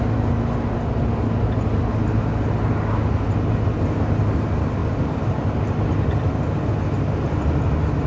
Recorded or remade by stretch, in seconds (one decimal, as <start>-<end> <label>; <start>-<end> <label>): 0.0-8.1 recorded